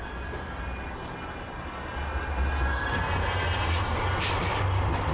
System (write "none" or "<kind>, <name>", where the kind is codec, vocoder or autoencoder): none